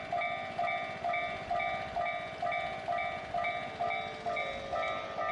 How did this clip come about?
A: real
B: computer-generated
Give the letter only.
A